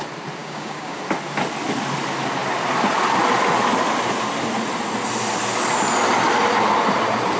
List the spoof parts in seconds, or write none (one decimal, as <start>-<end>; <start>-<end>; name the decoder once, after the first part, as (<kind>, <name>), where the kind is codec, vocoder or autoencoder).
0.4-1.0 (codec, DAC)